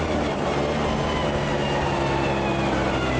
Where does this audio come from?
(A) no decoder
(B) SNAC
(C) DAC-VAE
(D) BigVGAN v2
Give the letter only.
A